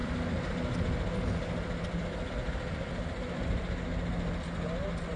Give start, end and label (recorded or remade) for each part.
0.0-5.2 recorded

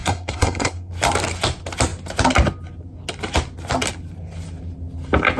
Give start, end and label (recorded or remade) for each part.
0.0-0.9 remade; 0.9-5.4 recorded